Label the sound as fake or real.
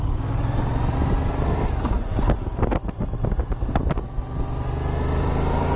real